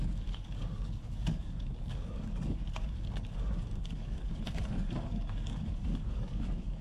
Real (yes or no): no